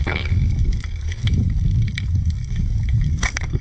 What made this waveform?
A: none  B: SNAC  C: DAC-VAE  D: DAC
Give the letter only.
D